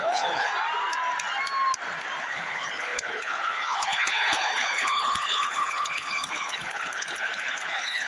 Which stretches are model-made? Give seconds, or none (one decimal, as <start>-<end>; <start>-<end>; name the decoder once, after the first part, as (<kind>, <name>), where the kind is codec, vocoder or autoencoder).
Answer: 0.0-0.5 (codec, HILCodec); 2.2-8.1